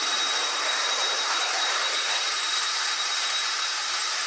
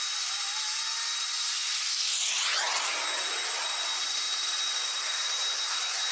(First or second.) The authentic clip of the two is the second